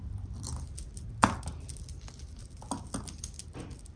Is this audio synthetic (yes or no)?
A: no